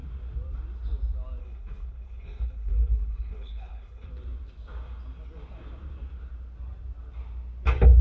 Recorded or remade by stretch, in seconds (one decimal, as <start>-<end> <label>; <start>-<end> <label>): 0.0-1.4 recorded; 1.4-4.1 remade; 4.1-8.0 recorded